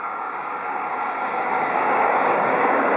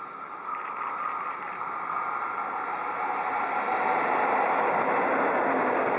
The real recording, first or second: second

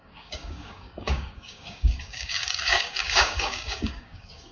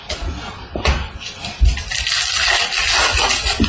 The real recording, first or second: second